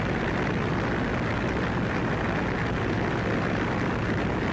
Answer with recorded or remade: recorded